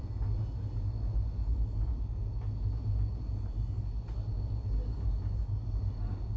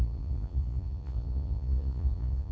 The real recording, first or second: first